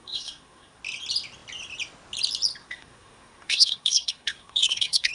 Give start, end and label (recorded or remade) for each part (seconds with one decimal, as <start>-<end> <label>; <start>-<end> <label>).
0.0-0.8 remade; 0.8-2.6 recorded; 2.6-5.1 remade